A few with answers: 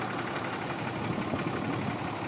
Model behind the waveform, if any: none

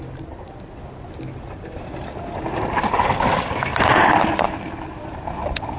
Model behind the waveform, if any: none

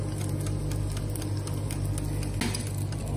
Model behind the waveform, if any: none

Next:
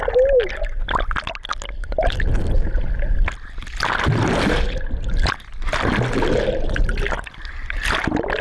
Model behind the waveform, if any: none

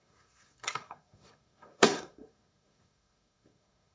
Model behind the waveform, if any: codec, SNAC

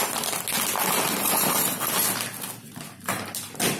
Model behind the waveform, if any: none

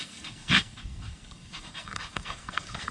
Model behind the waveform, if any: codec, SNAC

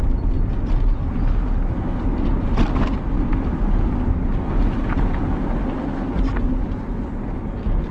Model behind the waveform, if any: none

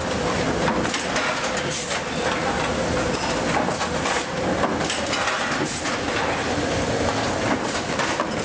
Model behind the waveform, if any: none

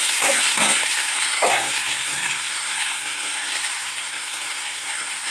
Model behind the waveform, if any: codec, SNAC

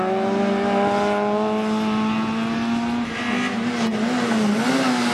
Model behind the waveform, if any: none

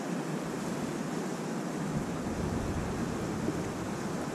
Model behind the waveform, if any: none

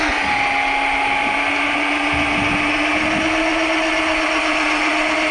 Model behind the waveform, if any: none